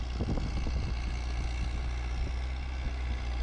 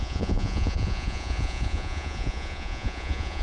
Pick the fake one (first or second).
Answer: second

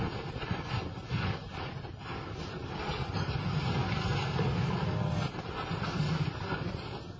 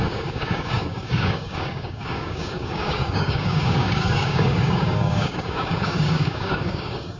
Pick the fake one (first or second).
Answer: second